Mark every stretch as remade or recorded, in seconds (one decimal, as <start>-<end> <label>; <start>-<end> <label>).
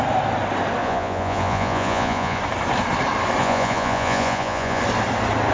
0.0-0.8 recorded; 0.8-2.4 remade; 2.4-3.4 recorded; 3.4-4.8 remade; 4.8-5.5 recorded